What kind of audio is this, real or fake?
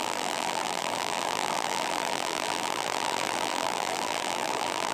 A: fake